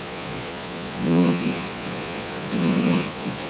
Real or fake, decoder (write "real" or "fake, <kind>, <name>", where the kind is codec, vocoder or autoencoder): fake, vocoder, Vocos